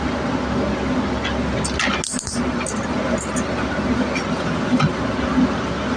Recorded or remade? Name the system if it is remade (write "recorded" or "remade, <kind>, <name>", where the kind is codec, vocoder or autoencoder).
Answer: recorded